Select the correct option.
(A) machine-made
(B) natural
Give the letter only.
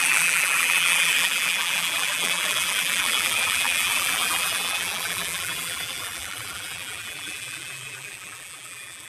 A